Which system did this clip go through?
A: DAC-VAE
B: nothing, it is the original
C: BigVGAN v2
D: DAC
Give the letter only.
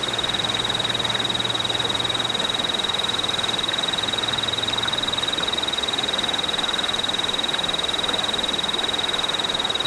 B